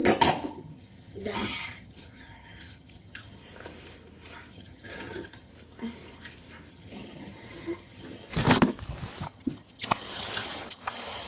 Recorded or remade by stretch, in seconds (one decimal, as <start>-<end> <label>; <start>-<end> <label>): 0.0-0.5 recorded; 0.5-3.4 remade; 3.4-4.5 recorded; 4.5-5.5 remade; 5.5-6.7 recorded; 6.7-8.3 remade; 8.3-9.2 recorded; 9.2-11.3 remade

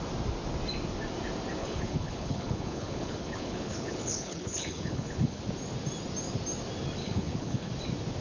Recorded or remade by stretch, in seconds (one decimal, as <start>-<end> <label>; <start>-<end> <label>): 0.0-1.6 recorded; 1.6-5.4 remade; 5.4-7.0 recorded; 7.0-7.7 remade; 7.7-8.2 recorded

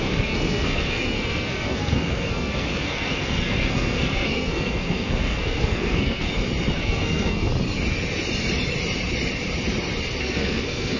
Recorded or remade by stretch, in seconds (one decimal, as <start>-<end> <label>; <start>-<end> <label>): 0.0-6.3 remade; 6.3-6.8 recorded; 6.8-7.5 remade; 7.5-10.2 recorded; 10.2-11.0 remade

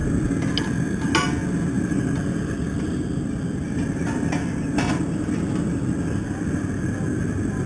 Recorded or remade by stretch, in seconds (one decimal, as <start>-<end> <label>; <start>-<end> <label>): 0.0-7.7 recorded

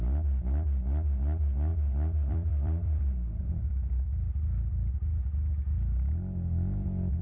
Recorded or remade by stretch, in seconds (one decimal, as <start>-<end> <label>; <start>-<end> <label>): 0.0-1.7 remade; 1.7-2.3 recorded; 2.3-3.9 remade; 3.9-7.2 recorded